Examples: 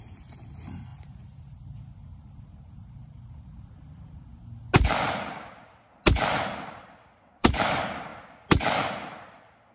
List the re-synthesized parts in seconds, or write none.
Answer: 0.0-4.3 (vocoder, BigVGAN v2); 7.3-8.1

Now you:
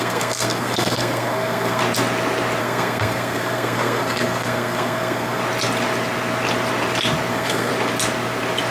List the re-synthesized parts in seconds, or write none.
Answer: 0.0-1.8 (codec, SNAC); 2.6-5.4; 7.3-7.7